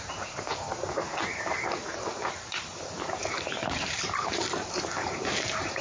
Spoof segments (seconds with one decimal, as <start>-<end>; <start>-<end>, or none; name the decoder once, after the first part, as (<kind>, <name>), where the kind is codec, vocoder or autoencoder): 0.0-5.8 (vocoder, BigVGAN v2)